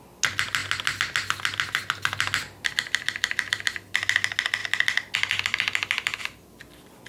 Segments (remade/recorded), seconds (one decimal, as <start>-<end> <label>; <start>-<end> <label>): 0.0-7.1 recorded